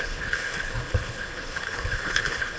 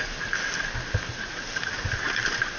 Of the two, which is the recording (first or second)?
second